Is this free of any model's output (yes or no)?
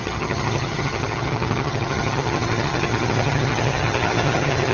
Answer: no